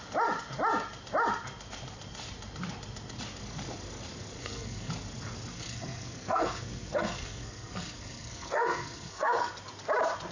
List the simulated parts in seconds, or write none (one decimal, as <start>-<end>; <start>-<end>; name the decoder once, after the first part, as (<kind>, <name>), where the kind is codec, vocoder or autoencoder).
4.4-4.9 (codec, SNAC); 5.5-9.5